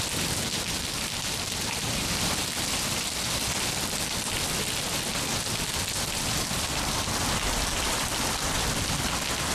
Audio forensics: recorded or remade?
recorded